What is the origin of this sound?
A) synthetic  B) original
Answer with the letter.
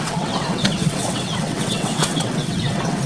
A